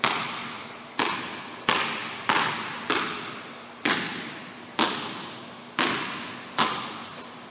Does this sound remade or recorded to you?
recorded